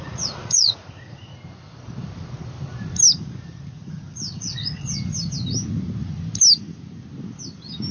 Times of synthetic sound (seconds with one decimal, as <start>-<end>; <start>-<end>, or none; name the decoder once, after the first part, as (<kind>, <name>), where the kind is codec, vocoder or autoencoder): 0.0-1.3 (vocoder, Vocos); 3.1-4.9